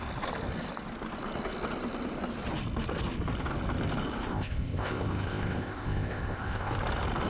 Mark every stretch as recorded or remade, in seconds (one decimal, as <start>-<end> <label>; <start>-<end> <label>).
0.0-4.3 recorded; 4.3-6.7 remade; 6.7-7.3 recorded